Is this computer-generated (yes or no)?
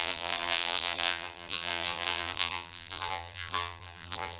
yes